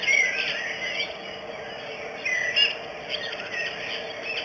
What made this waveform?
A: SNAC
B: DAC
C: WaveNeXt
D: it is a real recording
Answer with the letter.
D